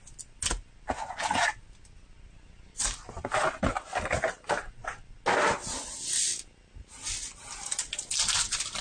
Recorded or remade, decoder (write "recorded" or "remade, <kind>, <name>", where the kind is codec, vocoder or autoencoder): recorded